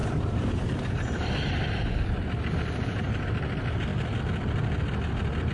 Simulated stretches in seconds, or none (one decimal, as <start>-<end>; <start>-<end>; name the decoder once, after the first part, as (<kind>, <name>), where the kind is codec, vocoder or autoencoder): 0.0-1.5 (vocoder, BigVGAN v2)